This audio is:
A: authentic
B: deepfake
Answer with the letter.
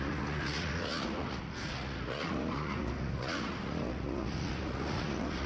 B